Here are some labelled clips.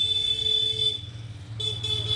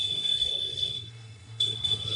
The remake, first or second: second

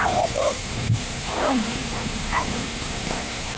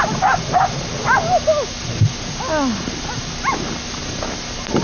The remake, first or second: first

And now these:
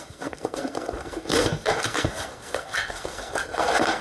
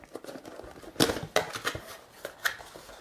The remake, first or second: first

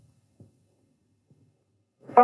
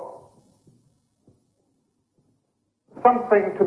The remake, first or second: first